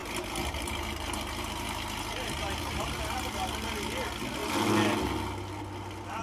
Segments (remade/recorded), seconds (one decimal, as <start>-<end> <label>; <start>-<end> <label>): 0.0-3.7 remade; 3.7-6.2 recorded